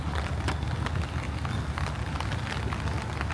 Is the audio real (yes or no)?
yes